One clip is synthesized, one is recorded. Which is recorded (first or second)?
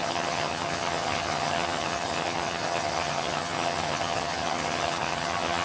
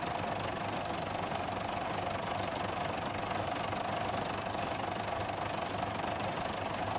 second